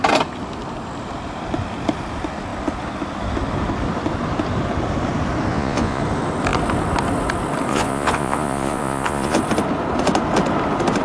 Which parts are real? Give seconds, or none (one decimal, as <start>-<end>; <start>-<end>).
0.0-5.5; 6.0-7.7; 9.4-11.0